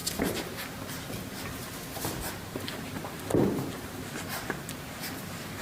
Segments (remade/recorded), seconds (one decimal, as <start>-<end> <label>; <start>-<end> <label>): 0.0-5.6 recorded